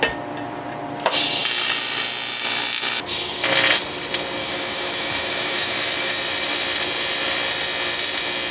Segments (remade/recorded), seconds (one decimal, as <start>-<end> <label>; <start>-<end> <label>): 0.0-4.4 recorded; 4.4-6.2 remade; 6.2-8.5 recorded

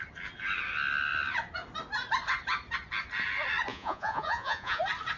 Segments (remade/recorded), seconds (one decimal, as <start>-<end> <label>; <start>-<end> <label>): 0.0-3.7 recorded; 3.7-4.8 remade; 4.8-5.2 recorded

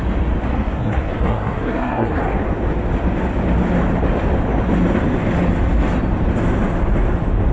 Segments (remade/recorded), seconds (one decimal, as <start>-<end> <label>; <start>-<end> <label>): 0.0-0.5 recorded; 0.5-2.2 remade; 2.2-7.5 recorded

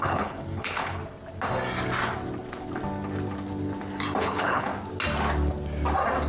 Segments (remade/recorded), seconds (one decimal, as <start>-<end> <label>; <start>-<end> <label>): 0.0-1.0 remade; 1.0-4.2 recorded; 4.2-4.7 remade; 4.7-6.3 recorded

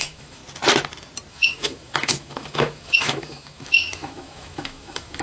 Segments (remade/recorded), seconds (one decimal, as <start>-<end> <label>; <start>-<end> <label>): 0.0-0.4 remade; 0.4-1.3 recorded; 1.3-5.2 remade

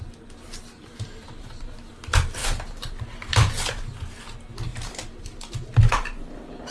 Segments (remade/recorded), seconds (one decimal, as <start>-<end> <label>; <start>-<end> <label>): 0.0-0.8 recorded; 0.8-1.9 remade; 1.9-2.4 recorded; 2.4-3.9 remade; 3.9-4.7 recorded; 4.7-6.7 remade

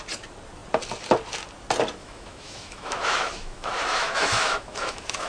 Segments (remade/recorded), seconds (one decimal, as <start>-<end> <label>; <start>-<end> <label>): 0.0-2.0 recorded; 2.0-5.3 remade

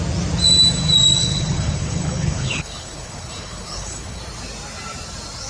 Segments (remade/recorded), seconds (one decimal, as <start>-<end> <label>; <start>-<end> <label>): 0.0-1.2 recorded; 1.2-4.2 remade; 4.2-5.5 recorded